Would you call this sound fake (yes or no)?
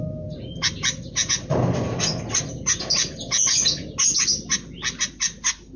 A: no